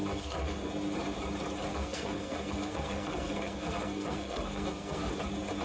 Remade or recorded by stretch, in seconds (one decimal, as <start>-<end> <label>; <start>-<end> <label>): 0.0-0.7 remade; 0.7-1.7 recorded; 1.7-5.1 remade; 5.1-5.6 recorded